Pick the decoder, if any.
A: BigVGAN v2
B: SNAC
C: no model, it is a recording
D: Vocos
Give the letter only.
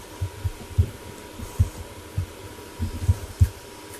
C